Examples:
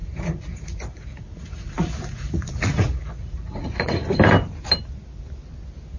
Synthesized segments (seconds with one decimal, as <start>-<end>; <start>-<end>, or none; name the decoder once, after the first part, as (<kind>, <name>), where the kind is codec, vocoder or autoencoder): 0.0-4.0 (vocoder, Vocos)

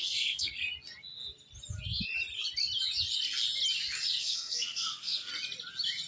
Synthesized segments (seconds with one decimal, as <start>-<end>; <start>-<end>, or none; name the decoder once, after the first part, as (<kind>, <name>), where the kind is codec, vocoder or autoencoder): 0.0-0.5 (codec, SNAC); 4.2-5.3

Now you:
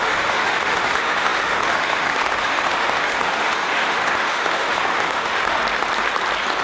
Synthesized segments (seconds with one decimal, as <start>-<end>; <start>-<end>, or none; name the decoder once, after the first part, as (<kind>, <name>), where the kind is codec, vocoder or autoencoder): 0.0-5.6 (autoencoder, DAC-VAE)

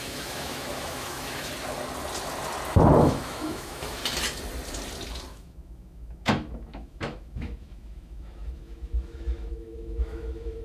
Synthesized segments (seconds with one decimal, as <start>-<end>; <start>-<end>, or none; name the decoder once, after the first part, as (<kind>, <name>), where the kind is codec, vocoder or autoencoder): 0.0-1.5 (autoencoder, DAC-VAE); 3.0-4.0; 5.3-10.6